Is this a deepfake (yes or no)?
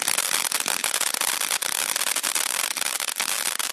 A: yes